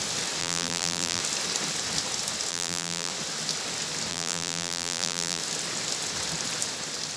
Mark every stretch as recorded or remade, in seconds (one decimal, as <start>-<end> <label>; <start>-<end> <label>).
0.0-0.4 recorded; 0.4-1.2 remade; 1.2-2.5 recorded; 2.5-3.1 remade; 3.1-4.1 recorded; 4.1-5.4 remade; 5.4-7.2 recorded